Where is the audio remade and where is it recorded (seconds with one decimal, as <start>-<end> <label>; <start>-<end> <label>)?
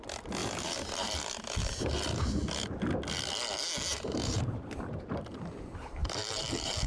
0.0-0.4 recorded; 0.4-2.5 remade; 2.5-3.9 recorded; 3.9-4.4 remade; 4.4-6.0 recorded; 6.0-6.9 remade